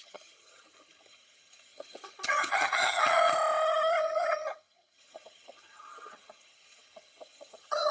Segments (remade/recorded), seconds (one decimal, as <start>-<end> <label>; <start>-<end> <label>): 0.0-3.3 remade; 3.3-4.0 recorded; 4.0-7.9 remade

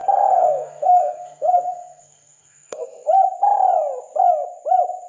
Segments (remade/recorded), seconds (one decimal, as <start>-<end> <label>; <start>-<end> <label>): 0.0-3.1 remade; 3.1-5.1 recorded

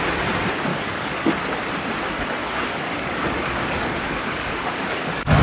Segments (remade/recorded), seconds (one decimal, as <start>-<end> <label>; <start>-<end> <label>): 0.0-0.7 recorded; 0.7-1.3 remade; 1.3-2.4 recorded; 2.4-5.4 remade

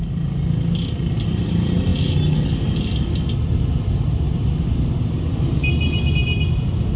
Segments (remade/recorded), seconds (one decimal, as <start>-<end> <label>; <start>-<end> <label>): 0.0-7.0 recorded

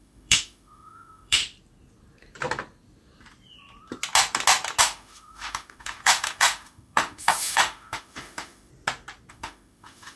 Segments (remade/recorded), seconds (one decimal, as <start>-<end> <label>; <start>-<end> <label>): 0.0-1.4 remade; 1.4-4.8 recorded; 4.8-8.7 remade; 8.7-9.3 recorded; 9.3-10.2 remade

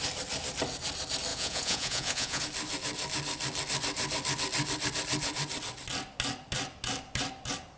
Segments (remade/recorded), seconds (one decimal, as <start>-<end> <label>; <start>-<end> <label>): 0.0-1.3 recorded; 1.3-2.4 remade; 2.4-7.8 recorded